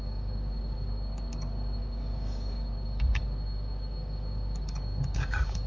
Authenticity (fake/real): fake